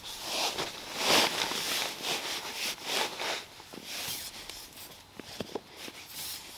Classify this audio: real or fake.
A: real